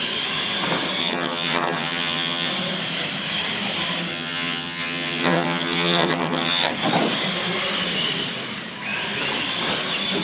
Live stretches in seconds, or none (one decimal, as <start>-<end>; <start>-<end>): 0.0-1.0; 2.5-4.1; 6.7-10.2